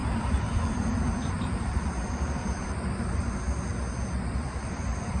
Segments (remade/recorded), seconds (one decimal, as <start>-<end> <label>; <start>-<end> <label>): 0.0-3.7 remade; 3.7-4.6 recorded; 4.6-5.2 remade